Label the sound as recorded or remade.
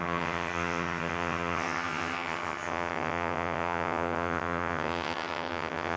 remade